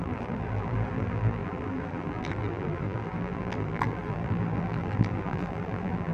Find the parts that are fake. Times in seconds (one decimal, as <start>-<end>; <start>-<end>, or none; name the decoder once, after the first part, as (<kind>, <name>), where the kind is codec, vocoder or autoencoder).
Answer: 0.0-6.1 (vocoder, BigVGAN v2)